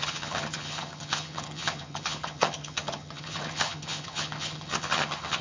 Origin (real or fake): fake